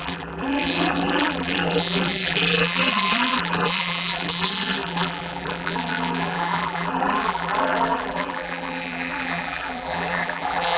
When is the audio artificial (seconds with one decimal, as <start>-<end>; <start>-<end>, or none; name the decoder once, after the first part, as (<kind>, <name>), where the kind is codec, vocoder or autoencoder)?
0.0-10.8 (vocoder, BigVGAN v2)